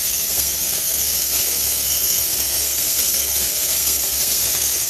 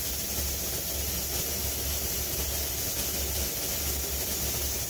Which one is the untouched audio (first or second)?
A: second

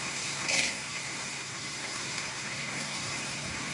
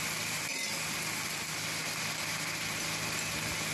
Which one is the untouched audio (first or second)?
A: second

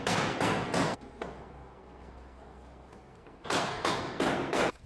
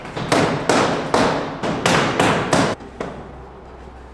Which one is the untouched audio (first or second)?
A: second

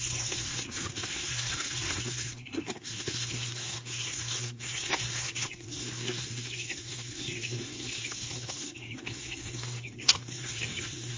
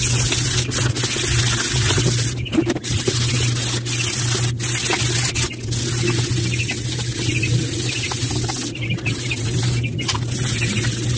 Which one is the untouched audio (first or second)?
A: second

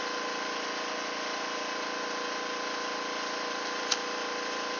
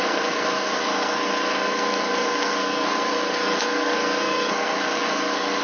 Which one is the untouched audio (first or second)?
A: first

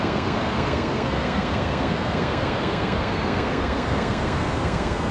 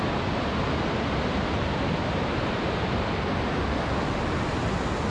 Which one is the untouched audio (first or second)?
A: second